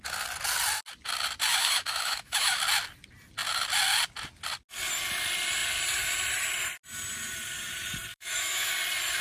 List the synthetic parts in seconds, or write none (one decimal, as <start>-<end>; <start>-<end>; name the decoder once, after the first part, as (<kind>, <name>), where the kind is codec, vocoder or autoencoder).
1.6-2.6 (autoencoder, DAC-VAE); 8.1-8.7